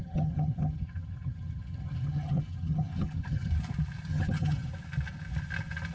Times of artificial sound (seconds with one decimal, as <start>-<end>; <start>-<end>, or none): 0.0-3.5; 4.1-4.7